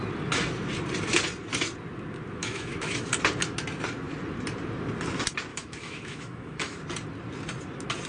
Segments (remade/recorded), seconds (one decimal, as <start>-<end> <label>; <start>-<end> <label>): 0.0-2.4 recorded; 2.4-3.1 remade; 3.1-5.5 recorded; 5.5-6.8 remade; 6.8-8.1 recorded

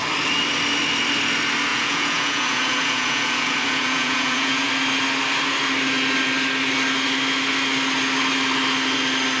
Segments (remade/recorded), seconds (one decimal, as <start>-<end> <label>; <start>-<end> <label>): 0.0-1.7 recorded; 1.7-4.7 remade; 4.7-9.4 recorded

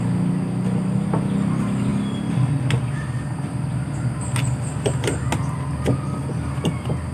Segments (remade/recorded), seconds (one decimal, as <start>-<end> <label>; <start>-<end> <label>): 0.0-7.1 recorded